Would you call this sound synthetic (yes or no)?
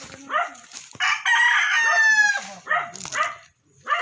no